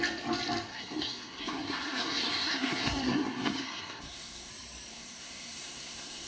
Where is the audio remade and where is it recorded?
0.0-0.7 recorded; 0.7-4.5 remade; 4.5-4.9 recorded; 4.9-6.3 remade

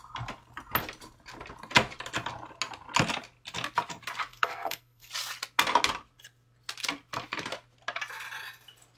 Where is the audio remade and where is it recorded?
0.0-4.3 recorded; 4.3-5.1 remade; 5.1-9.0 recorded

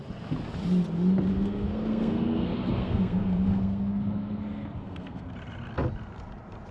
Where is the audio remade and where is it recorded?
0.0-1.3 recorded; 1.3-5.3 remade; 5.3-6.7 recorded

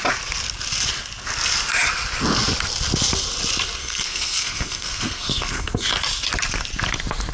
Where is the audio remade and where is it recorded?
0.0-3.8 recorded; 3.8-5.9 remade; 5.9-7.3 recorded

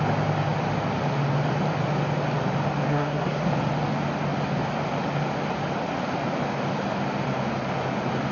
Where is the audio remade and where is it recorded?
0.0-2.9 recorded; 2.9-3.5 remade; 3.5-8.3 recorded

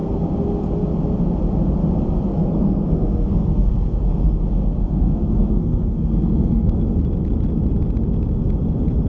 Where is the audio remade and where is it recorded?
0.0-2.3 recorded; 2.3-6.8 remade; 6.8-9.1 recorded

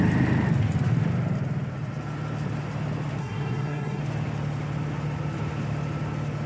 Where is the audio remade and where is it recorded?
0.0-3.2 recorded; 3.2-4.0 remade; 4.0-6.5 recorded